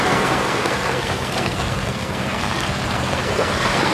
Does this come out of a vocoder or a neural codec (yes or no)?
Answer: yes